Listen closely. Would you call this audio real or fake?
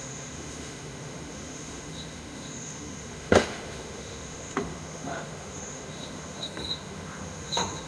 fake